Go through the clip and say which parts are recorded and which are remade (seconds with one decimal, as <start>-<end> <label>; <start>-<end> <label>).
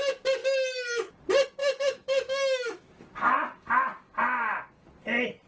0.0-0.4 recorded; 0.4-1.1 remade; 1.1-1.6 recorded; 1.6-2.9 remade; 2.9-5.5 recorded